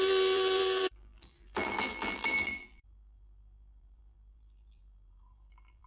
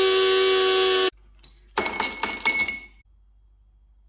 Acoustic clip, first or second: second